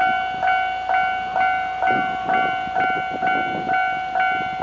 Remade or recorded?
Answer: recorded